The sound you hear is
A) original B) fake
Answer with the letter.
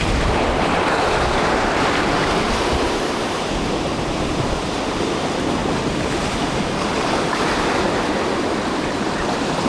B